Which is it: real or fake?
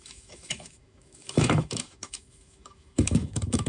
fake